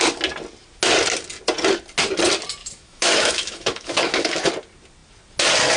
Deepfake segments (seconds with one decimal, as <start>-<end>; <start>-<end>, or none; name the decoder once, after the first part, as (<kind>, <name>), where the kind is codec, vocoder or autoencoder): 2.6-4.5 (autoencoder, DAC-VAE)